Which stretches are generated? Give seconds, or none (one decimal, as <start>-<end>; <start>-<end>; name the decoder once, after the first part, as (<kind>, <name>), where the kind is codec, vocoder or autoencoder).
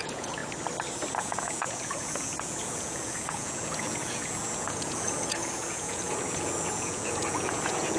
0.0-0.4 (vocoder, Vocos); 1.1-8.0